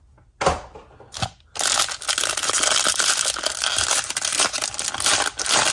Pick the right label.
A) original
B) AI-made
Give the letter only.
A